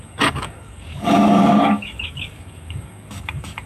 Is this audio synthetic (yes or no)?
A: yes